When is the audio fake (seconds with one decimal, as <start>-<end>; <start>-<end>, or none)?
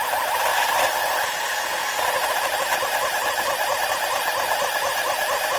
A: none